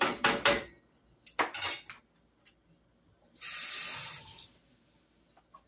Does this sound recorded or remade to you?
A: remade